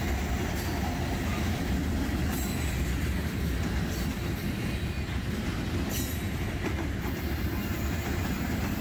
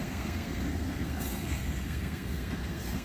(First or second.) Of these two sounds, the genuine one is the first